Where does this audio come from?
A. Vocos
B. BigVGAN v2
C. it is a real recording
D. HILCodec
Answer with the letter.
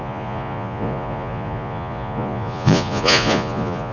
A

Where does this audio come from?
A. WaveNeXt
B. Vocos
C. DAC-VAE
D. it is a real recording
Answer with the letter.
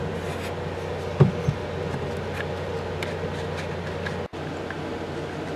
D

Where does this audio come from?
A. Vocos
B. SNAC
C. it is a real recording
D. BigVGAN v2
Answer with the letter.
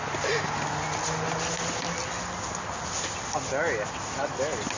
C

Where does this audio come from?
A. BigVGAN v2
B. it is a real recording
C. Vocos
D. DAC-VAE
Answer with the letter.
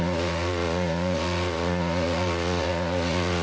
C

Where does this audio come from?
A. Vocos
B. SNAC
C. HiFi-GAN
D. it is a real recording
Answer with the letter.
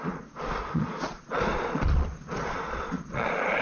A